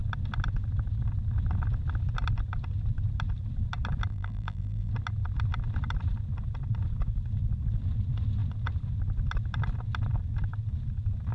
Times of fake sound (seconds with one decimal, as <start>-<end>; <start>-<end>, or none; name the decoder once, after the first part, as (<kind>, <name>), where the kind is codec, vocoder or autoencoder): 4.1-4.9 (vocoder, BigVGAN v2)